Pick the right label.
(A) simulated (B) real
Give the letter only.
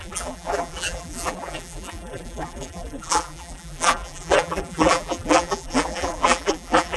A